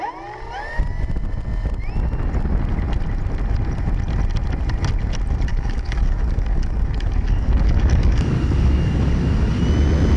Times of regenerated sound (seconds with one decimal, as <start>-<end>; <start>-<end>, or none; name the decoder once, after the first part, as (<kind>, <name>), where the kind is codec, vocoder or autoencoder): 5.5-9.6 (codec, DAC)